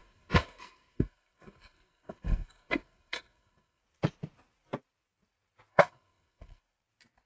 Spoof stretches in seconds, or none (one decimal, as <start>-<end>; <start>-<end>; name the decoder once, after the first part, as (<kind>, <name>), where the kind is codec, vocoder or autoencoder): 0.0-3.8 (codec, SNAC); 5.7-6.6